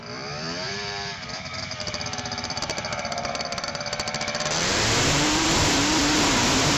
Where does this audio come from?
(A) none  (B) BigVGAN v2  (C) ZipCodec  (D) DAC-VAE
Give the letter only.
B